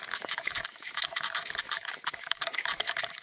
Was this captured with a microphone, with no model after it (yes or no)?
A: no